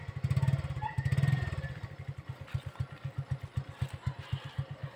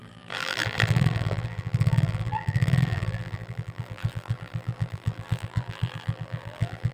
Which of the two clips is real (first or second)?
first